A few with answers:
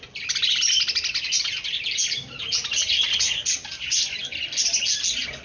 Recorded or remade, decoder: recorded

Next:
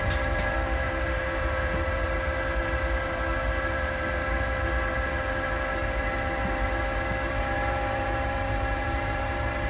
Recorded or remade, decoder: remade, vocoder, BigVGAN v2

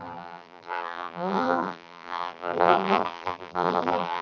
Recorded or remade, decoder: remade, vocoder, BigVGAN v2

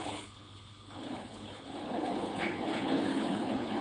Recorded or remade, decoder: remade, codec, HILCodec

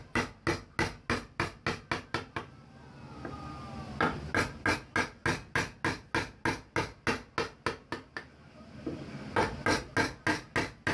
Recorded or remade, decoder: recorded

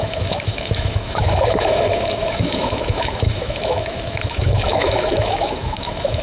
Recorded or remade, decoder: remade, autoencoder, DAC-VAE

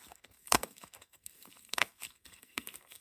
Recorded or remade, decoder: remade, codec, SNAC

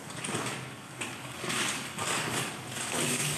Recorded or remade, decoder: remade, codec, DAC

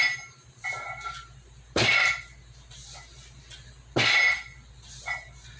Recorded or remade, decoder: recorded